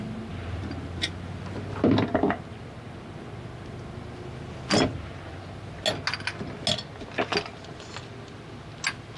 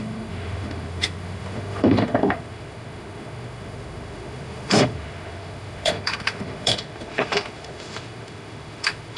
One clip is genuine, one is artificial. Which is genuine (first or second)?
first